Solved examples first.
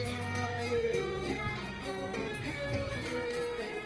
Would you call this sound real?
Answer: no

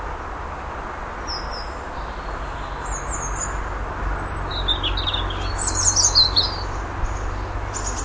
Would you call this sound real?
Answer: yes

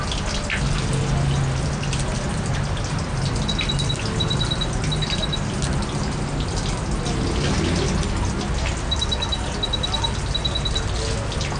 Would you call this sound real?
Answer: yes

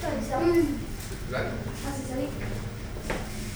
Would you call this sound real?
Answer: yes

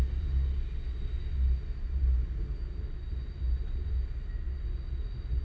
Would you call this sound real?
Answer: yes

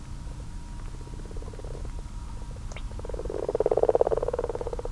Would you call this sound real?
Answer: yes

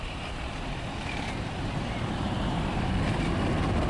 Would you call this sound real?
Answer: no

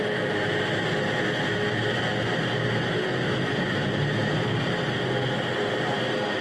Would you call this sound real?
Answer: yes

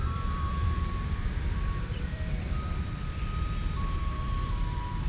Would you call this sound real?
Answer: no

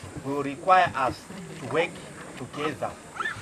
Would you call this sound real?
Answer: no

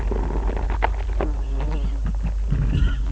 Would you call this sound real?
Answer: yes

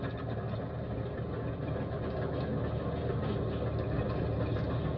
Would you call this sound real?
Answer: yes